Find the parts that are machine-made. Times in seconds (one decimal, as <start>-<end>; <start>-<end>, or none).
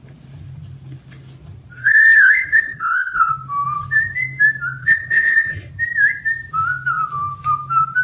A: 1.8-3.3; 4.8-5.7